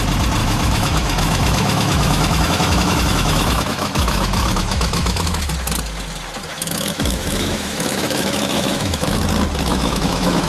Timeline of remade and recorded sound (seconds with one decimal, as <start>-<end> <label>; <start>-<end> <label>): 0.0-0.4 recorded; 0.4-5.5 remade; 5.5-6.5 recorded; 6.5-9.2 remade; 9.2-9.7 recorded; 9.7-10.5 remade